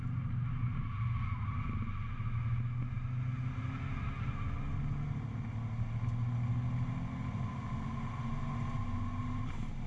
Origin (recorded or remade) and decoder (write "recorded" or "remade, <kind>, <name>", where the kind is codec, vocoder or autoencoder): recorded